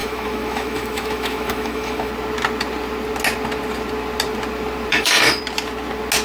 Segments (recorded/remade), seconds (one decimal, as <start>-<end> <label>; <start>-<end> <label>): 0.0-2.1 remade; 2.1-4.9 recorded; 4.9-5.4 remade; 5.4-6.2 recorded